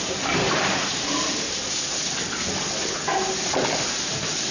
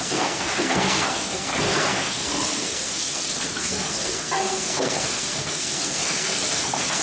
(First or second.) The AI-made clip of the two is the second